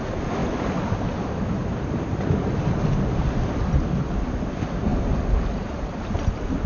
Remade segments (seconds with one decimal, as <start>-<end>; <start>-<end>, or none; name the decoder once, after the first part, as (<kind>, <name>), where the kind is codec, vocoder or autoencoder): none